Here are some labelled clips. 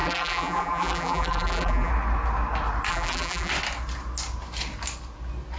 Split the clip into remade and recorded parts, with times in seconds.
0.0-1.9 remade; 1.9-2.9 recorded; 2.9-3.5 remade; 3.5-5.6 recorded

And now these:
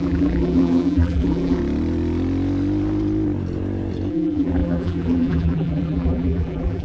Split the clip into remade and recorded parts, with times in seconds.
0.0-1.6 remade; 1.6-4.1 recorded; 4.1-6.8 remade

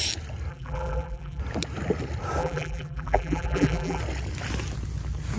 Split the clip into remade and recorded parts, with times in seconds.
0.0-0.5 recorded; 0.5-1.4 remade; 1.4-2.4 recorded; 2.4-4.0 remade; 4.0-5.4 recorded

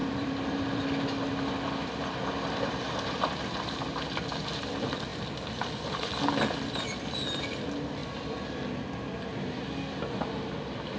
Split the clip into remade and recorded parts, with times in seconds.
0.0-0.8 remade; 0.8-11.0 recorded

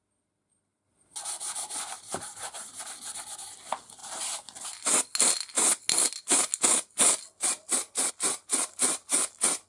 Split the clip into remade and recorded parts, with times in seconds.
0.0-0.7 recorded; 0.7-3.0 remade; 3.0-9.7 recorded

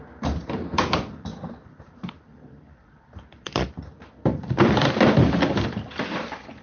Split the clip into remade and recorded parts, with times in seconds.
0.0-6.6 remade

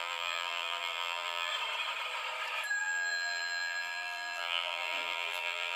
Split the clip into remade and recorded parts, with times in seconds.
0.0-1.5 remade; 1.5-2.8 recorded; 2.8-5.8 remade